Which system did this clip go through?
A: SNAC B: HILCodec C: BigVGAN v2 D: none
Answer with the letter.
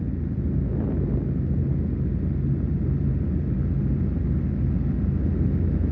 D